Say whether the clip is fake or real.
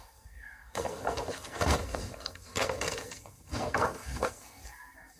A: fake